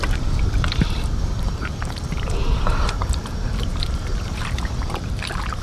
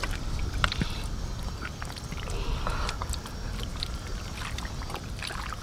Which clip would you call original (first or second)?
second